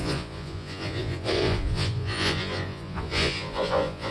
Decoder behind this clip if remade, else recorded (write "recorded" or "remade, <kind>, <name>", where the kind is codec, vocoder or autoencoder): remade, vocoder, Vocos